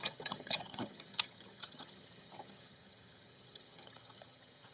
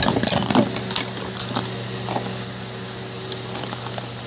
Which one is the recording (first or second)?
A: second